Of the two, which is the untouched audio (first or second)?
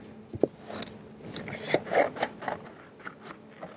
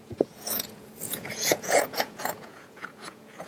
first